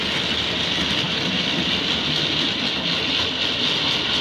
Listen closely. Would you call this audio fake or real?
real